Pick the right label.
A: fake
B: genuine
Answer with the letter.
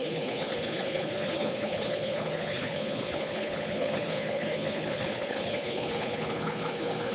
A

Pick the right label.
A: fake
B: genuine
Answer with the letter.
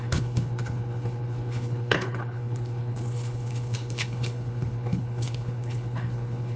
A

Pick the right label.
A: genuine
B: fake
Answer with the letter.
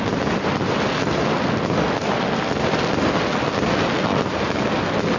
A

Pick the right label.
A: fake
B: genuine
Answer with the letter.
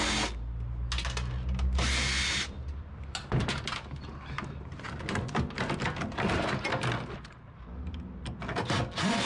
B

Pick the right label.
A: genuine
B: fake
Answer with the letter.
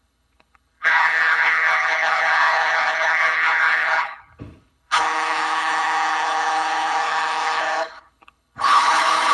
B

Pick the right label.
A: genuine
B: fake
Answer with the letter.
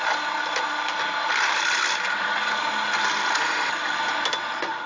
A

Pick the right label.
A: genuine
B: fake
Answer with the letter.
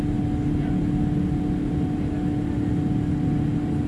A